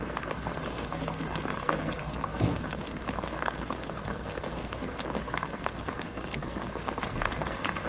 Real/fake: fake